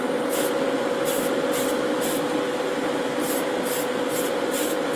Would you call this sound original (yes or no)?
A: yes